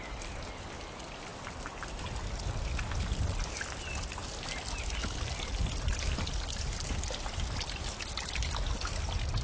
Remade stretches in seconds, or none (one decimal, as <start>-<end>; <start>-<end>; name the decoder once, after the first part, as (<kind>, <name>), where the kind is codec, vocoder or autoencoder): none